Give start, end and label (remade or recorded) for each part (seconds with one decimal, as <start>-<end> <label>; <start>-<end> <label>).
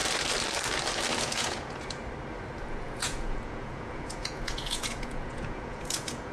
0.0-1.2 recorded; 1.2-2.0 remade; 2.0-2.6 recorded; 2.6-6.3 remade